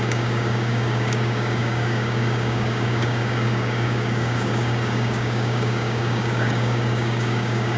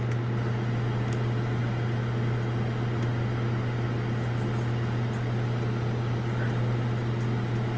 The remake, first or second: first